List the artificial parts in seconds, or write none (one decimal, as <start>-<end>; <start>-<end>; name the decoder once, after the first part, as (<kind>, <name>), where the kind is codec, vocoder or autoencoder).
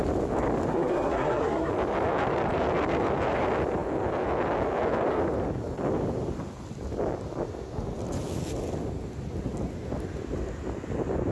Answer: 0.7-1.7 (codec, SNAC)